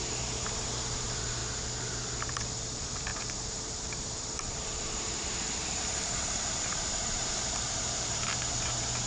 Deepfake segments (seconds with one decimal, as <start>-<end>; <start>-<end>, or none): 0.0-1.4; 2.3-9.1